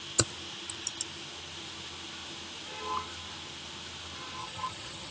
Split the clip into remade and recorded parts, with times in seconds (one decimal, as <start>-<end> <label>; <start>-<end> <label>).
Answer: 0.0-4.4 recorded; 4.4-5.1 remade